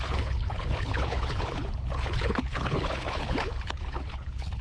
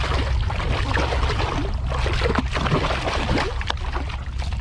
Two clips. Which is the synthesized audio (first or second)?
first